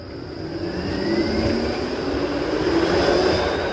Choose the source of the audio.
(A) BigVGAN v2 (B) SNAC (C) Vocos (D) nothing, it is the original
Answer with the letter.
D